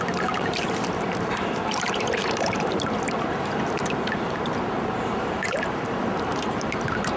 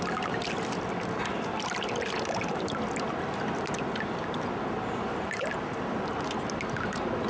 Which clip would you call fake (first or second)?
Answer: first